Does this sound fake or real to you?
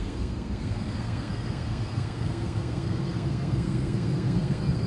fake